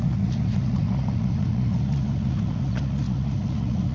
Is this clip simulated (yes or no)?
yes